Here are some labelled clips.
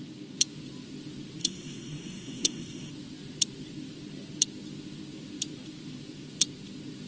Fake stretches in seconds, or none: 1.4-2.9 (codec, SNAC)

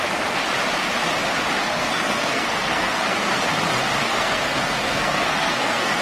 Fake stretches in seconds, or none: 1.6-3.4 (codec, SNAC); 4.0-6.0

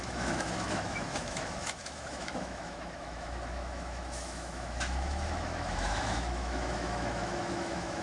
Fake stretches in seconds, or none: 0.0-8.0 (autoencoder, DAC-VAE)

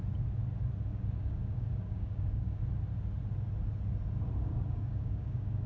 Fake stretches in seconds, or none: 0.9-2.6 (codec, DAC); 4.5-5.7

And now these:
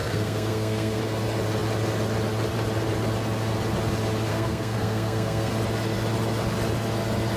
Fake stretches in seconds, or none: 0.0-1.0 (codec, SNAC); 4.3-5.5

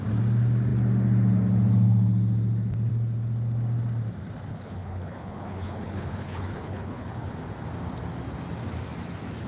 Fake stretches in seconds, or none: 4.5-7.3 (codec, HILCodec)

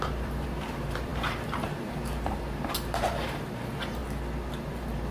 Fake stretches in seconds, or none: 0.0-4.0 (vocoder, BigVGAN v2); 4.6-5.1

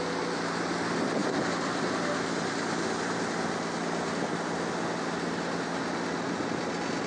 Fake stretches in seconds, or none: 1.2-1.8 (vocoder, BigVGAN v2)